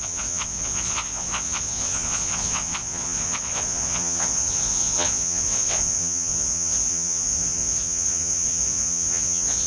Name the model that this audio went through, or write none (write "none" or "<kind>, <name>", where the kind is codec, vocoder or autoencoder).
vocoder, Vocos